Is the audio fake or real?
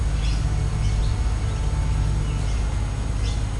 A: real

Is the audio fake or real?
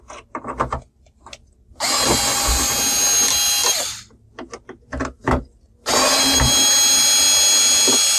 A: real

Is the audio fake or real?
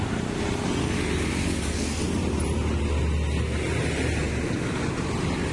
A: real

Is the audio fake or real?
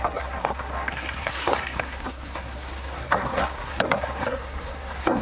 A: fake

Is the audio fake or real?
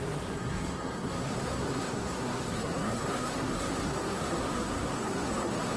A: fake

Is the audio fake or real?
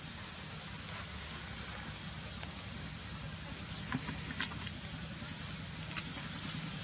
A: real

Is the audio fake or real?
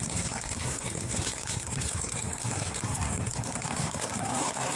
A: fake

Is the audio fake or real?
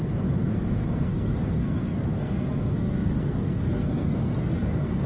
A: fake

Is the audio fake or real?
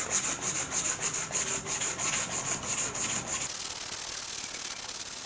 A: real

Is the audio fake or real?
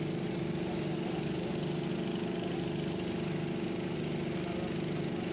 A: real